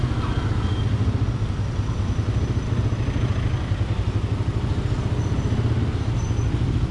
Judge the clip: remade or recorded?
recorded